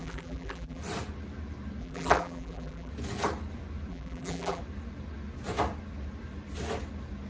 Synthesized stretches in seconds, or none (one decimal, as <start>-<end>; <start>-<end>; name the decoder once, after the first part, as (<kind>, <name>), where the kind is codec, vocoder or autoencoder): 0.0-0.8 (vocoder, BigVGAN v2); 1.8-2.9; 3.9-4.6

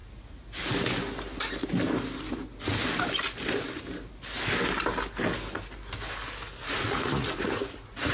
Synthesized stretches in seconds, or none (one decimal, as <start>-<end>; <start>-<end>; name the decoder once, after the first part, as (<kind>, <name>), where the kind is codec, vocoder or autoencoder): 6.6-8.1 (vocoder, Vocos)

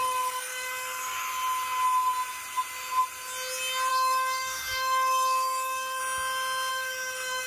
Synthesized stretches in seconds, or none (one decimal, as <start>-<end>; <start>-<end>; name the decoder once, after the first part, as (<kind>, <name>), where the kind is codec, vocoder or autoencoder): 0.0-1.3 (codec, DAC); 3.9-6.0; 6.7-7.5

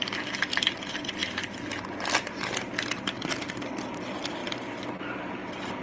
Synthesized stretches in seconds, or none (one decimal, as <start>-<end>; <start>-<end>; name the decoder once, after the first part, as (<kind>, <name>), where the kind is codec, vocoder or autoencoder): none

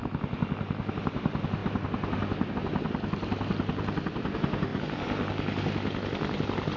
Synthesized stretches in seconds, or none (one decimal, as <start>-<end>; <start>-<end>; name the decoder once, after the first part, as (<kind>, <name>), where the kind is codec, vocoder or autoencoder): none

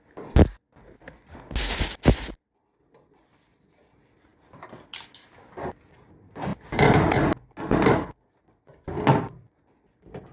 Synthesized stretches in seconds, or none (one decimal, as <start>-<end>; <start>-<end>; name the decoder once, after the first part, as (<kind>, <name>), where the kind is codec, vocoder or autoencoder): none